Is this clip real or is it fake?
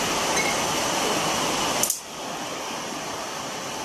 real